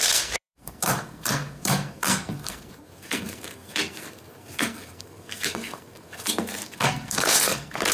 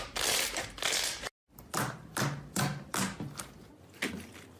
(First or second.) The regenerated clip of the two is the first